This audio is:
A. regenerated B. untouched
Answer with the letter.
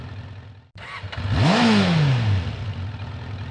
B